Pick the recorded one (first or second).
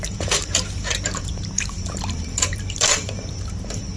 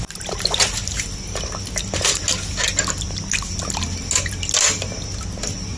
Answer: second